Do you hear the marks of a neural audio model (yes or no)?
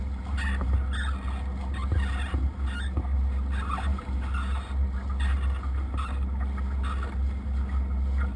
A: no